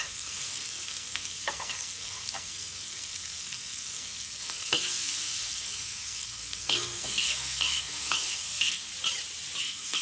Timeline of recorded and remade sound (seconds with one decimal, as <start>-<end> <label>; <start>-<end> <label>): 0.0-8.9 remade; 8.9-9.6 recorded; 9.6-10.0 remade

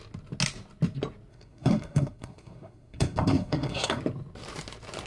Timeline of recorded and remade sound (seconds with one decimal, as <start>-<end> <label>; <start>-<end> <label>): 0.0-1.3 recorded; 1.3-4.0 remade; 4.0-5.1 recorded